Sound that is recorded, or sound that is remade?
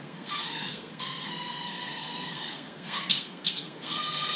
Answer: remade